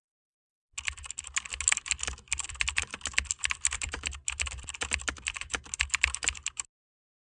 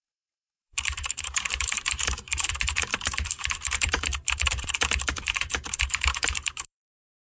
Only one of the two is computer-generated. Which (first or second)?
second